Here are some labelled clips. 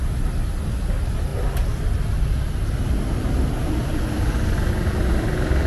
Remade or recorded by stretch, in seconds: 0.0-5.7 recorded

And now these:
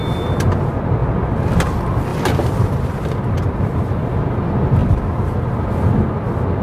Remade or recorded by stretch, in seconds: 0.0-1.0 recorded; 1.0-1.6 remade; 1.6-2.1 recorded; 2.1-2.8 remade; 2.8-4.8 recorded; 4.8-5.5 remade; 5.5-6.6 recorded

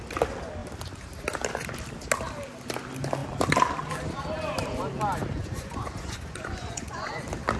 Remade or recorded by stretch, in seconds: 0.0-5.4 recorded; 5.4-7.1 remade; 7.1-7.6 recorded